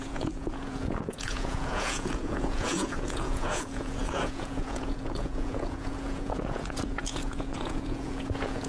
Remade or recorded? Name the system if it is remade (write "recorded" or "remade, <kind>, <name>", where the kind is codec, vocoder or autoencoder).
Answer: remade, vocoder, Vocos